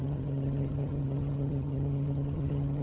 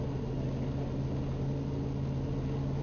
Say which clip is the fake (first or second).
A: first